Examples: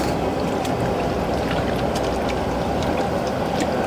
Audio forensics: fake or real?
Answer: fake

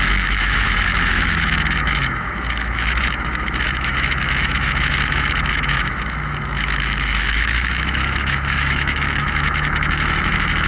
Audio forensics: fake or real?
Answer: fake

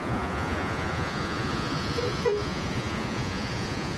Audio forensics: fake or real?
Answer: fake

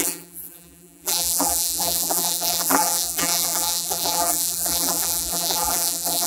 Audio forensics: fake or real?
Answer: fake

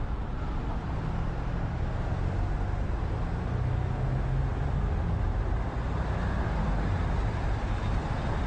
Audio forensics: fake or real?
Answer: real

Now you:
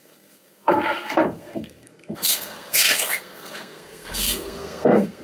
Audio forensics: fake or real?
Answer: fake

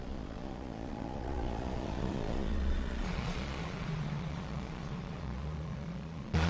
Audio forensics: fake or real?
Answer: fake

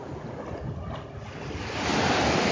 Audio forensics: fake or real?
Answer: real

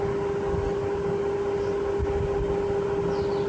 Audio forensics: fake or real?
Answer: real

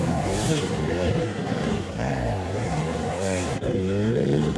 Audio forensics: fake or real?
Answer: fake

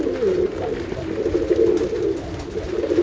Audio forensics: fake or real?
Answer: real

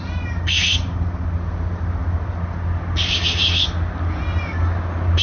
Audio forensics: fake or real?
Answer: real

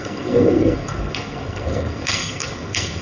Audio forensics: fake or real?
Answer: fake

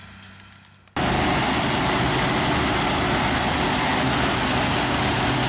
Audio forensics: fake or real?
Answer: real